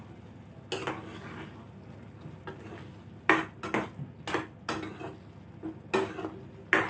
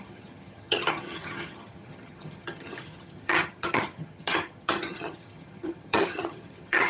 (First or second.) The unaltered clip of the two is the first